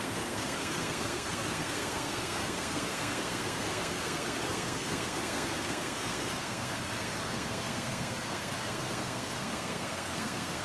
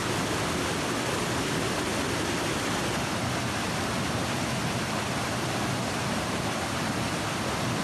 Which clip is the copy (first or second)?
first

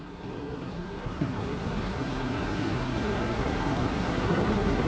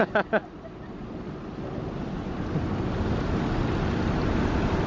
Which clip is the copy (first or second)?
first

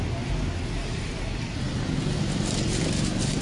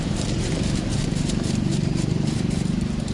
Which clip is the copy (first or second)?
second